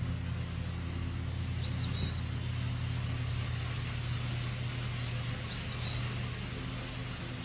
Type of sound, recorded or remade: recorded